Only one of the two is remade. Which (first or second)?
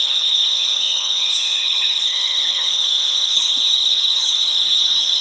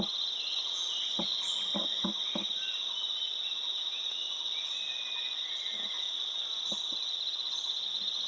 first